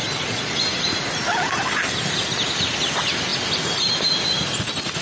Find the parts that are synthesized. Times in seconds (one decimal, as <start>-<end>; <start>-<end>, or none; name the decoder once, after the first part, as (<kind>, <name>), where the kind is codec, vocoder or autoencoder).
none